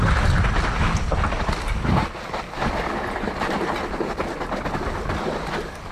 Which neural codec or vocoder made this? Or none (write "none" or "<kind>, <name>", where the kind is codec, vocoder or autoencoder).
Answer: none